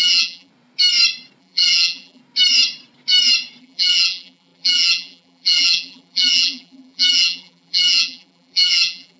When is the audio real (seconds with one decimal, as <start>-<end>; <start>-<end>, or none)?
0.5-1.4; 2.2-3.6